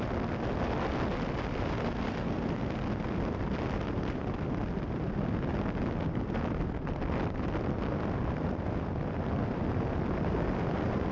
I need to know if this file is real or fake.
real